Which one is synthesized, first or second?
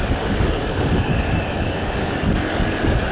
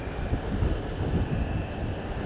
first